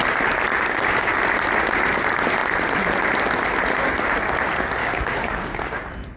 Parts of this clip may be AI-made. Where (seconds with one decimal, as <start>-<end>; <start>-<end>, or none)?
0.5-1.1; 4.8-5.8